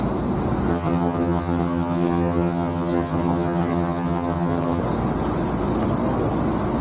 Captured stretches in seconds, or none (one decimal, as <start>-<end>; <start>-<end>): 0.0-0.7; 4.8-6.8